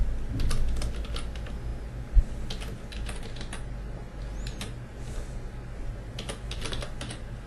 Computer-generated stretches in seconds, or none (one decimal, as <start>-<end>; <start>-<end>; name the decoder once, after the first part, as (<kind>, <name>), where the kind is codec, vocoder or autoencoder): none